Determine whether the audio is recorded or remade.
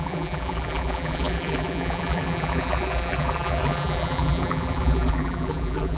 remade